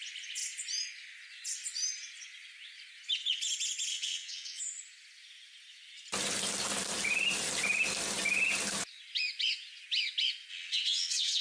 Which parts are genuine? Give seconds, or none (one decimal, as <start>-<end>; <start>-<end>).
0.0-3.9; 4.6-10.5